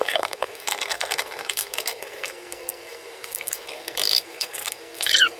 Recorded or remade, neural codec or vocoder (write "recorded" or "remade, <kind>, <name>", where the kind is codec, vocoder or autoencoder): remade, codec, SNAC